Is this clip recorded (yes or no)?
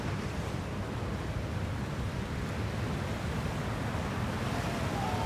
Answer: yes